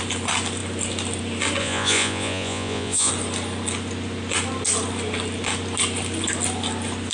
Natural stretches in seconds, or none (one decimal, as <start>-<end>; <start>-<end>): 0.0-1.6; 3.1-7.1